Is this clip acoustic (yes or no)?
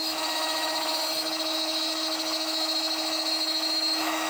no